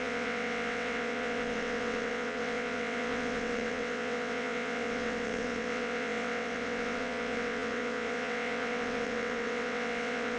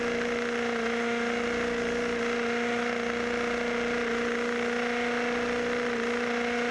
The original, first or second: second